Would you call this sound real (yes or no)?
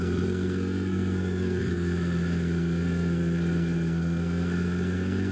no